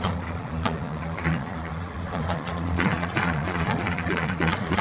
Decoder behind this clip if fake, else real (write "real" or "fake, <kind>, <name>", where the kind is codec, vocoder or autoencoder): fake, vocoder, Vocos